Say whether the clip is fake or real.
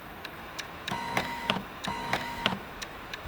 fake